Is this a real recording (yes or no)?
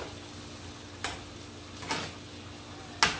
yes